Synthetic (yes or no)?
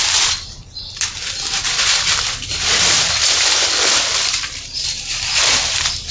yes